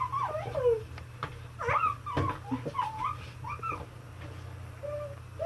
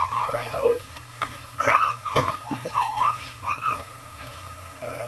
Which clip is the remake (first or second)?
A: second